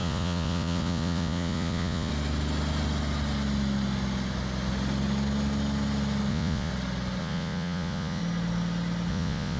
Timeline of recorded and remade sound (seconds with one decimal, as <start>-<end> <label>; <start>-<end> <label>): 0.0-2.1 remade; 2.1-6.3 recorded; 6.3-6.7 remade; 6.7-7.2 recorded; 7.2-8.2 remade; 8.2-9.1 recorded; 9.1-9.6 remade